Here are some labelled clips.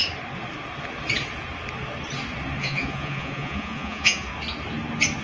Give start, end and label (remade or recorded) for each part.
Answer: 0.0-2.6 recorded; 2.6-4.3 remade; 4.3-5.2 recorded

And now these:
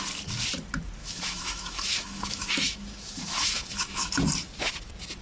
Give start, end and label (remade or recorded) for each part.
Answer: 0.0-1.0 recorded; 1.0-4.1 remade; 4.1-5.2 recorded

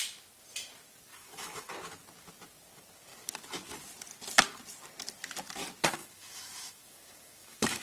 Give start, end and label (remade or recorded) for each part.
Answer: 0.0-1.1 recorded; 1.1-1.7 remade; 1.7-6.0 recorded; 6.0-7.8 remade

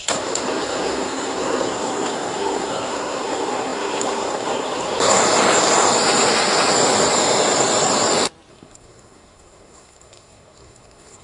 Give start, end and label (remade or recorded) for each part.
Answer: 0.0-5.2 remade; 5.2-8.5 recorded; 8.5-11.2 remade

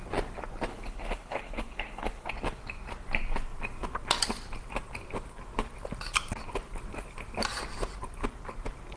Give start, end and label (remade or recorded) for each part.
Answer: 0.0-0.7 recorded; 0.7-2.3 remade; 2.3-9.0 recorded

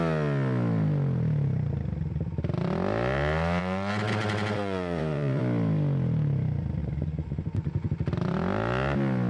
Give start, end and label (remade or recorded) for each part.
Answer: 0.0-3.6 recorded; 3.6-5.4 remade; 5.4-6.8 recorded; 6.8-7.9 remade; 7.9-9.3 recorded

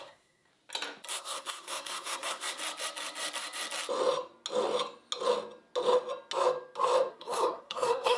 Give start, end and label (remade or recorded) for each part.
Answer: 0.0-0.5 remade; 0.5-1.1 recorded; 1.1-2.6 remade; 2.6-7.1 recorded; 7.1-8.2 remade